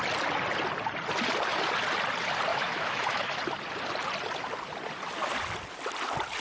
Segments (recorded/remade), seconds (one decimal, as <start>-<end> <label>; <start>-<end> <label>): 0.0-2.5 recorded; 2.5-3.4 remade; 3.4-6.4 recorded